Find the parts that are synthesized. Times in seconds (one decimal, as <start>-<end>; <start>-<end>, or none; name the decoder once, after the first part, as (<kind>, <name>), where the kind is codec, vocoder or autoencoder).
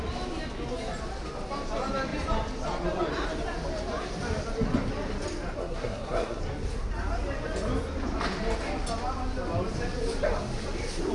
5.6-6.4 (codec, SNAC)